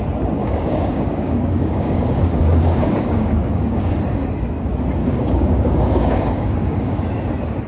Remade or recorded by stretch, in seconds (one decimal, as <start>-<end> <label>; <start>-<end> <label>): 0.0-0.4 recorded; 0.4-3.9 remade; 3.9-5.0 recorded; 5.0-7.0 remade; 7.0-7.7 recorded